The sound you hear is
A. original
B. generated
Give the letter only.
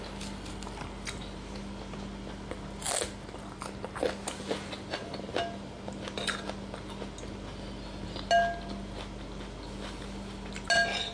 A